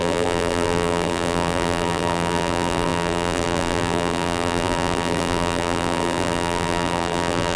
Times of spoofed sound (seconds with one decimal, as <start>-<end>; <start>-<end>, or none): 0.0-7.6

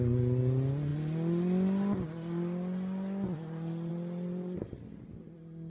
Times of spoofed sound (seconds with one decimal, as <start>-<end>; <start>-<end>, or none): none

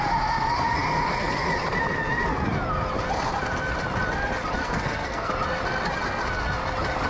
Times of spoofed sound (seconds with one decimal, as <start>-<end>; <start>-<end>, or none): 4.6-5.3